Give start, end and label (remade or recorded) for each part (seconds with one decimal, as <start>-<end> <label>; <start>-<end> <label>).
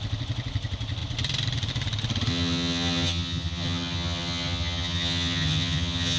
0.0-2.3 recorded; 2.3-6.2 remade